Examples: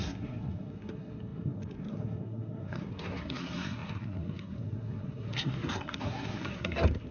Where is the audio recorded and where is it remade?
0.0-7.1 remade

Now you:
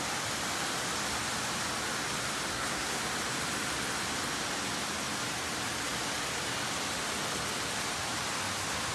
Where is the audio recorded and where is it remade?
0.0-2.5 recorded; 2.5-3.0 remade; 3.0-8.9 recorded

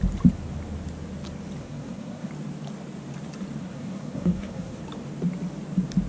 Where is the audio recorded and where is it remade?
0.0-1.6 recorded; 1.6-2.3 remade; 2.3-3.6 recorded; 3.6-4.8 remade; 4.8-6.1 recorded

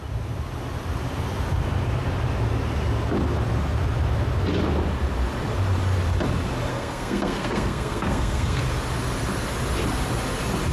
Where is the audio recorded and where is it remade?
0.0-6.7 recorded; 6.7-8.6 remade; 8.6-10.7 recorded

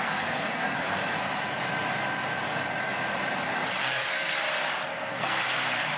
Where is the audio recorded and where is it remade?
0.0-1.0 remade; 1.0-3.8 recorded; 3.8-4.4 remade; 4.4-5.1 recorded; 5.1-6.0 remade